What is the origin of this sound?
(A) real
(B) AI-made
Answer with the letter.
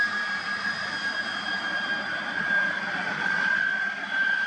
B